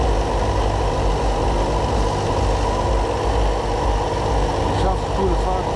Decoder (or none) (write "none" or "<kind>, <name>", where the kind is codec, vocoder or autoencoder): none